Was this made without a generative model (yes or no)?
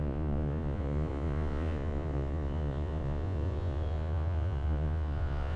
no